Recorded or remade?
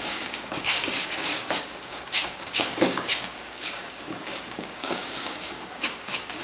remade